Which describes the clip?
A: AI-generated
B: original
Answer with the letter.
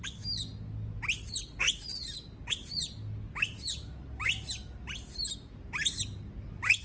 B